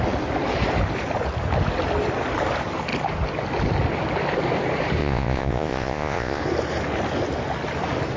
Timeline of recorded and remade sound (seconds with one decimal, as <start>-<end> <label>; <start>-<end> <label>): 0.0-5.0 recorded; 5.0-6.4 remade; 6.4-8.2 recorded